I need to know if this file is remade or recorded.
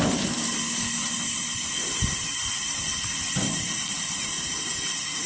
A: recorded